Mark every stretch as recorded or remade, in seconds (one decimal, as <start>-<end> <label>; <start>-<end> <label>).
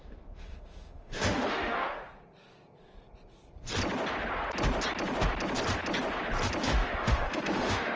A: 0.0-2.0 remade; 2.0-6.6 recorded; 6.6-8.0 remade